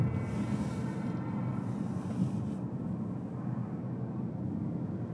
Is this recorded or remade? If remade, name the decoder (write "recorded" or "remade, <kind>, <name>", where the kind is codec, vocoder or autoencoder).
recorded